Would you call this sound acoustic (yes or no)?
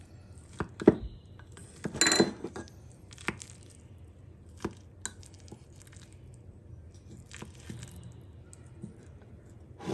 yes